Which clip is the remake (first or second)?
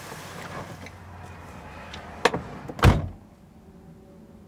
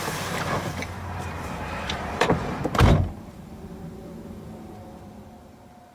second